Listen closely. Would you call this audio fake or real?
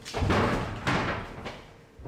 fake